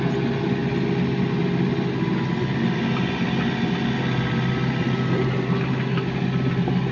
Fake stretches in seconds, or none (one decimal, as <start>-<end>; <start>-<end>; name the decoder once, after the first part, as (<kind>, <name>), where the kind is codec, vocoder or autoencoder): none